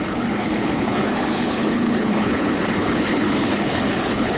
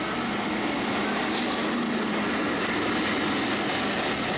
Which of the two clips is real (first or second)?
second